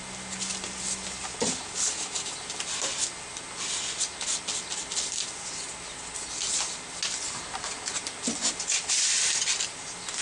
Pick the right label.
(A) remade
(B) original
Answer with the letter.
B